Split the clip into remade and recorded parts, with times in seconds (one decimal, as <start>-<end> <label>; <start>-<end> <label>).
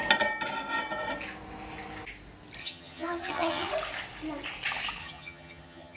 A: 0.0-2.6 recorded; 2.6-3.7 remade; 3.7-5.0 recorded; 5.0-6.0 remade